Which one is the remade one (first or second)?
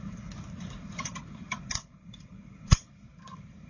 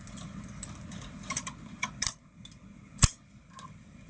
first